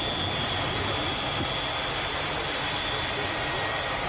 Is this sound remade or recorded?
recorded